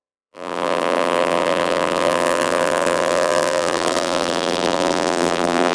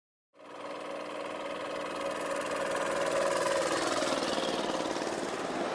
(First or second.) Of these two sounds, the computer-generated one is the first